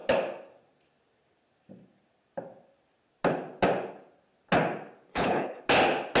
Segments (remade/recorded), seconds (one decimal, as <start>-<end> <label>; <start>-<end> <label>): 0.0-5.1 recorded; 5.1-5.6 remade; 5.6-6.2 recorded